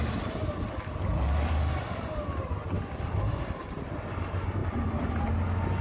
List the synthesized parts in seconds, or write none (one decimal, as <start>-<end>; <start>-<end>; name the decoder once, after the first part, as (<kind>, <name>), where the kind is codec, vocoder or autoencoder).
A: 1.1-2.5 (vocoder, BigVGAN v2); 4.6-5.3